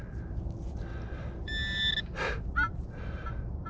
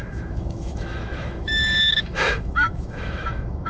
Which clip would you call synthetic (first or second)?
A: second